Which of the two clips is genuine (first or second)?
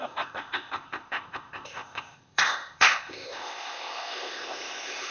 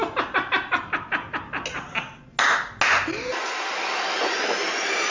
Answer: second